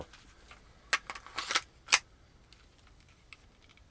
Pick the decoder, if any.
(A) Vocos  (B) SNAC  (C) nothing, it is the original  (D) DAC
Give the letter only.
C